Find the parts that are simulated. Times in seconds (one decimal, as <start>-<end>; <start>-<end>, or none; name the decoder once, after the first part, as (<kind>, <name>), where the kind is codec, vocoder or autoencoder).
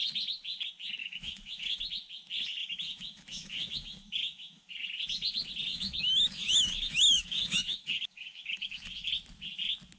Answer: 1.0-1.8 (autoencoder, DAC-VAE); 2.6-4.7; 5.7-9.1